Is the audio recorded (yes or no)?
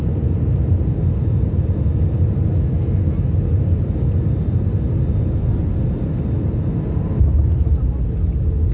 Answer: yes